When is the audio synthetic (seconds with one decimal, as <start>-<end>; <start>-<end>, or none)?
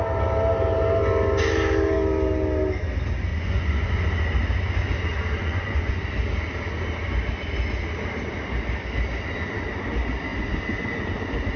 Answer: 3.3-3.9; 5.4-6.0